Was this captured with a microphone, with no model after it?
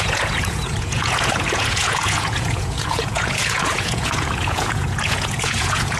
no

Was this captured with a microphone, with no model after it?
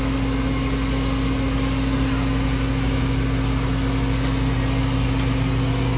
yes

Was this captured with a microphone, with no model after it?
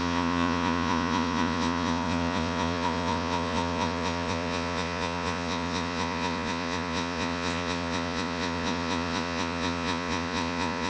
no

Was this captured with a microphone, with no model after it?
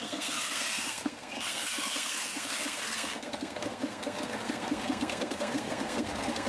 no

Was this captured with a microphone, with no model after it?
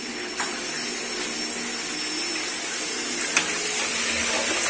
yes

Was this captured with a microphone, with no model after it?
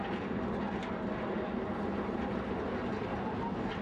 yes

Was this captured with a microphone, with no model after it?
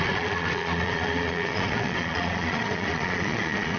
no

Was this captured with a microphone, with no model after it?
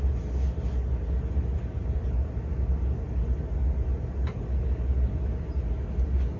yes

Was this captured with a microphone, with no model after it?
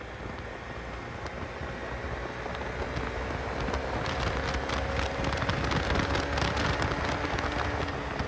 yes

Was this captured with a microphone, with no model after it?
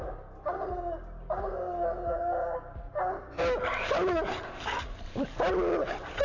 yes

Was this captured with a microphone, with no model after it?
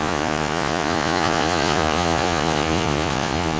no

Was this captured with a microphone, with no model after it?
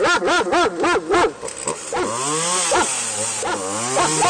yes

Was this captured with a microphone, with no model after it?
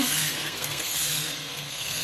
no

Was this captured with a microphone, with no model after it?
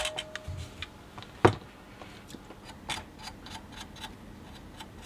yes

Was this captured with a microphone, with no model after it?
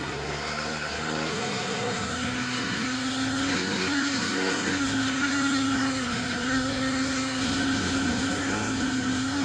no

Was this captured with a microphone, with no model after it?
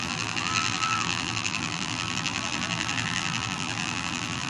no